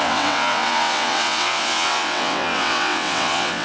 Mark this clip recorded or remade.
remade